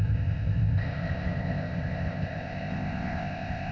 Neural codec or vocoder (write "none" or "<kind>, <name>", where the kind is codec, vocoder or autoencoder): codec, ZipCodec